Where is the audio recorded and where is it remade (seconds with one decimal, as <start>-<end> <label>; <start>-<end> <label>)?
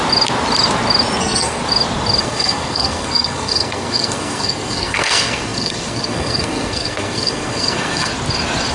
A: 0.0-1.2 recorded; 1.2-1.6 remade; 1.6-2.2 recorded; 2.2-8.1 remade; 8.1-8.7 recorded